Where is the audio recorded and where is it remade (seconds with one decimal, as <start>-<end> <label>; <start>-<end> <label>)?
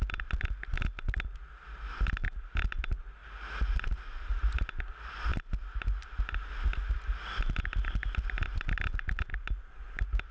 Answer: 0.0-10.3 recorded